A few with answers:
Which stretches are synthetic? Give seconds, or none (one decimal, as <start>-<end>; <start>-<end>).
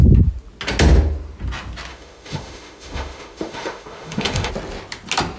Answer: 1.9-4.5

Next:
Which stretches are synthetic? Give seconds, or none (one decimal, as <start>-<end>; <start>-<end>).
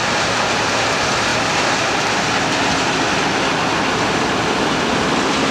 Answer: 0.0-1.3; 4.6-5.5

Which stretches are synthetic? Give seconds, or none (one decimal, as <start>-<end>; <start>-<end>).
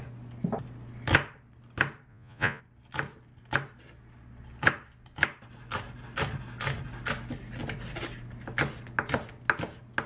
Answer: 2.1-2.6